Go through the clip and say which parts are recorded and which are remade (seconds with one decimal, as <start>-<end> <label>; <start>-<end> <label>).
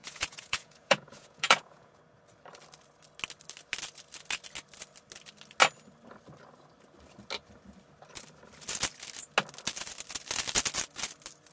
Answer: 0.0-2.0 remade; 2.0-11.5 recorded